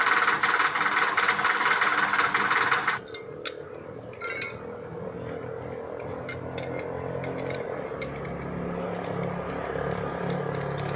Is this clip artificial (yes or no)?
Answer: no